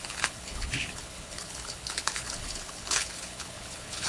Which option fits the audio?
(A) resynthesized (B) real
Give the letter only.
A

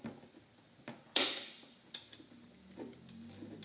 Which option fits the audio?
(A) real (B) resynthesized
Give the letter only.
A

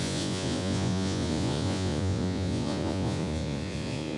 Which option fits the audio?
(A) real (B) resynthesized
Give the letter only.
B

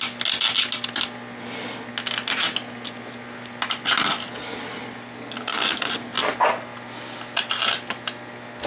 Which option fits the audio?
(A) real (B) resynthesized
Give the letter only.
A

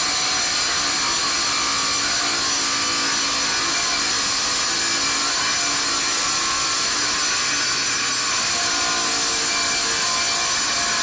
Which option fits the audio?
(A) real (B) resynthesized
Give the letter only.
A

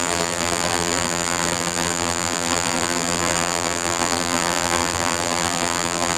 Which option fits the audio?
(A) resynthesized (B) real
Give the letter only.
A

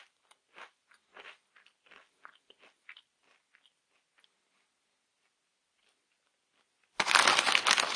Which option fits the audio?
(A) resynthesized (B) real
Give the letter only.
B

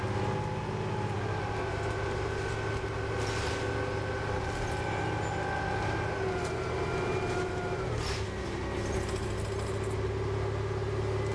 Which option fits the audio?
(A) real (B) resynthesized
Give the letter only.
A